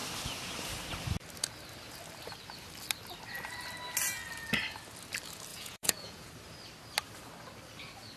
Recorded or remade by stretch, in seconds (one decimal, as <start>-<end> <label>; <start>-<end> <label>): 0.0-5.5 recorded; 5.5-6.3 remade; 6.3-8.2 recorded